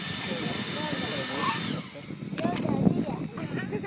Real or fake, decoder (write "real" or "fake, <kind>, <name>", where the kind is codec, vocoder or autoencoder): real